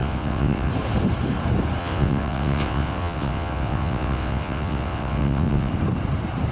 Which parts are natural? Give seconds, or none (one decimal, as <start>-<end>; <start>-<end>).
0.7-1.8; 5.7-6.5